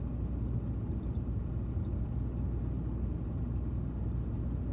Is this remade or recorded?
recorded